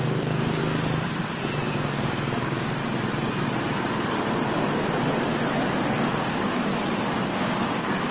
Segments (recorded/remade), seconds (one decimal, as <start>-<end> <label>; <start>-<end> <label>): 0.0-0.6 remade; 0.6-1.7 recorded; 1.7-2.8 remade; 2.8-5.8 recorded; 5.8-6.7 remade; 6.7-7.2 recorded; 7.2-8.1 remade